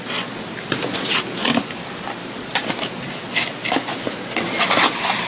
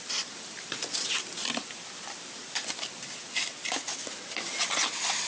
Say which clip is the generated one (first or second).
second